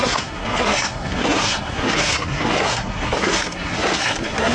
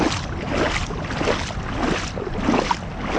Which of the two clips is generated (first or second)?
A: first